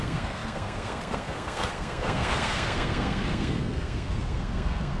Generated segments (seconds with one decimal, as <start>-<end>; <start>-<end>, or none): 0.0-5.0